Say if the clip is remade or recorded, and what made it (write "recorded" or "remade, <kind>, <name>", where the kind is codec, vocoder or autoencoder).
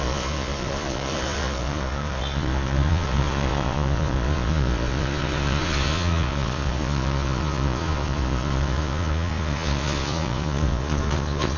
remade, vocoder, Vocos